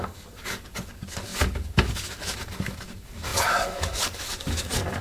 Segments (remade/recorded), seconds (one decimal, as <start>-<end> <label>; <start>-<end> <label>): 0.0-5.0 remade